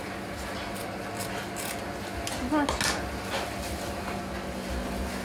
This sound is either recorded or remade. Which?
recorded